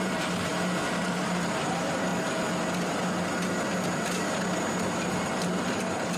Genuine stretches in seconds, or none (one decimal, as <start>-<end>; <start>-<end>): 0.5-1.0; 2.1-4.9